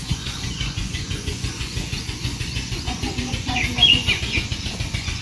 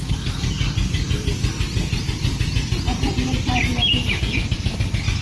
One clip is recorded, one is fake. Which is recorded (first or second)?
second